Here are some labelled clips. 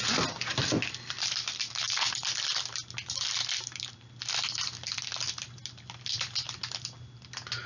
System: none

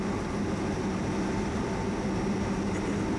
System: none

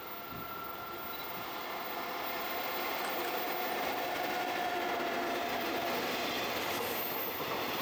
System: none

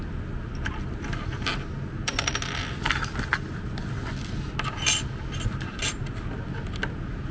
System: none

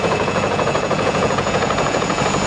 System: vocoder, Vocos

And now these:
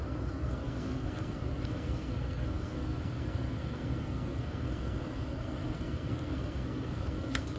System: codec, SNAC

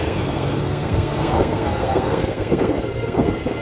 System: codec, SNAC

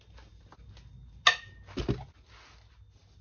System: none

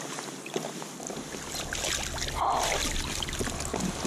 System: none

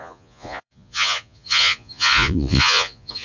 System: vocoder, Vocos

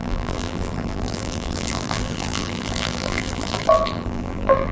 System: vocoder, BigVGAN v2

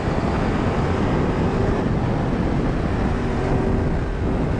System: none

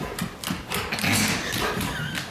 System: none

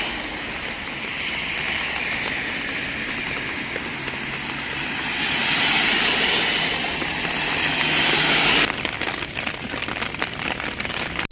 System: none